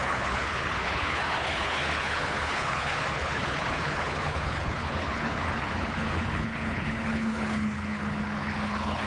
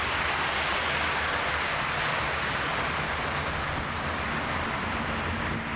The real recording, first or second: second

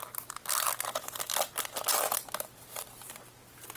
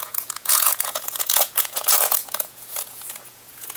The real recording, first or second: first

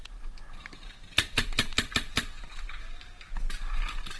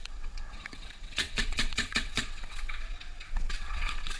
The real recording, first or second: first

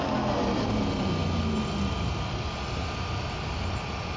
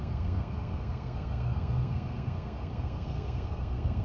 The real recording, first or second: first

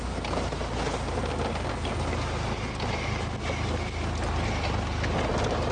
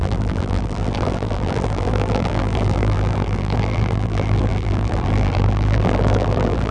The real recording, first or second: first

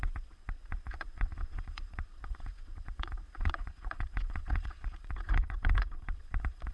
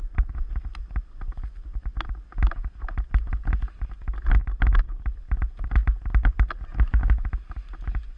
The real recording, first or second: second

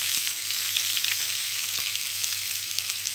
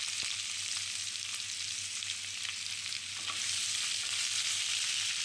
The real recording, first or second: second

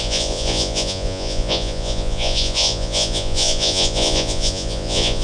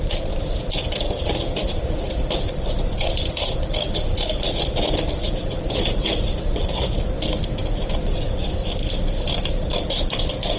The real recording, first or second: second